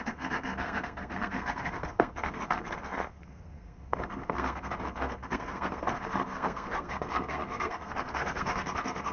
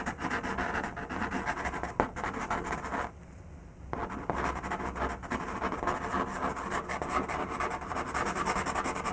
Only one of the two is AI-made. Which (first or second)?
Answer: first